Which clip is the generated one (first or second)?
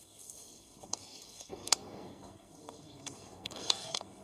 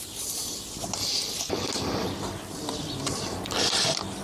first